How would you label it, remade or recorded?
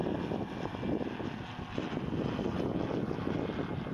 recorded